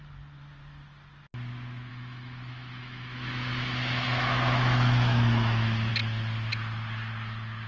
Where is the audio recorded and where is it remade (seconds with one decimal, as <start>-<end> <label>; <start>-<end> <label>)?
0.0-1.9 recorded; 1.9-5.9 remade; 5.9-7.7 recorded